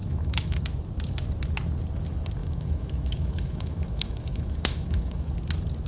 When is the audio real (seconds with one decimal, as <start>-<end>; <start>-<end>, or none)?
0.6-2.4; 5.3-5.9